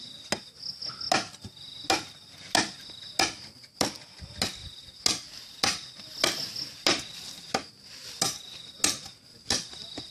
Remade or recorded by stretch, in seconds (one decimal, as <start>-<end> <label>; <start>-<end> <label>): 0.0-9.3 recorded; 9.3-10.1 remade